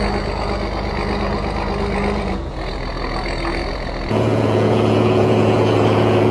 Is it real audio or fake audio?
fake